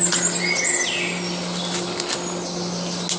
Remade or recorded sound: recorded